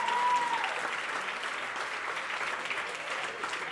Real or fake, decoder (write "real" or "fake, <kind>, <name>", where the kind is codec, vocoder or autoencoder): real